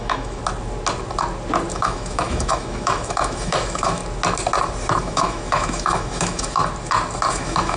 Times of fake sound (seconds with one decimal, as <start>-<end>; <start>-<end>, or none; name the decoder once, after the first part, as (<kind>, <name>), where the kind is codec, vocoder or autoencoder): 0.0-0.4 (autoencoder, DAC-VAE); 1.7-4.0; 5.0-6.6; 7.3-7.8